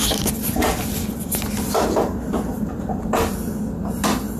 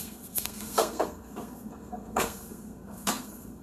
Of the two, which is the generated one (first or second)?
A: second